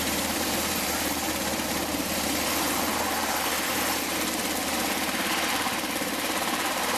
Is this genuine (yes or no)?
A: no